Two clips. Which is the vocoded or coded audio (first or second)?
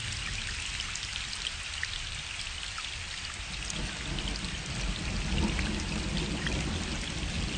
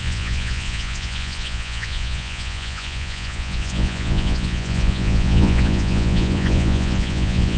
second